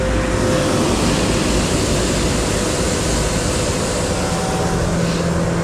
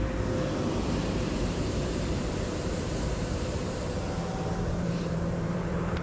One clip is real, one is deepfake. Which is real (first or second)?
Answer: first